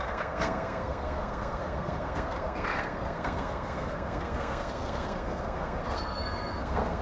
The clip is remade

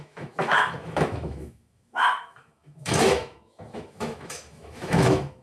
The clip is remade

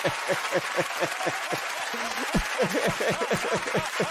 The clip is recorded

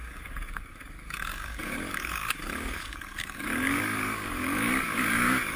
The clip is remade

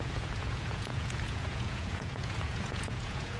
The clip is remade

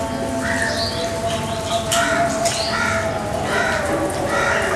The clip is recorded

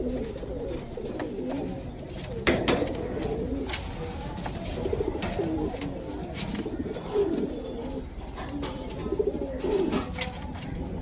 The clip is recorded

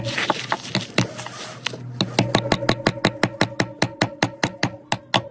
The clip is recorded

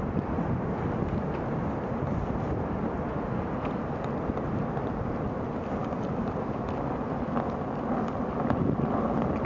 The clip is recorded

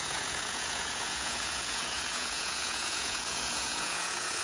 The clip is remade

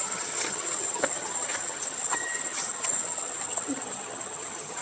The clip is remade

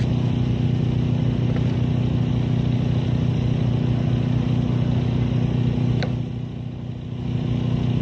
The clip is recorded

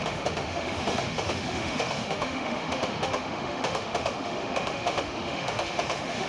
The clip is remade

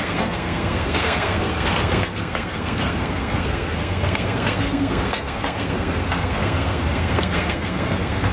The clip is remade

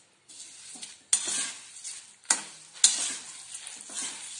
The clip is recorded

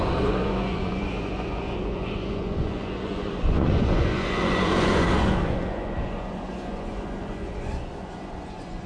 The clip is remade